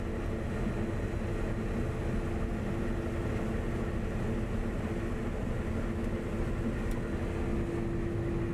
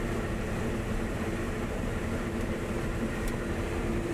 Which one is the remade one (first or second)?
second